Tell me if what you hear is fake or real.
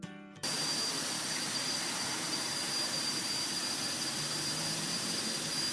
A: fake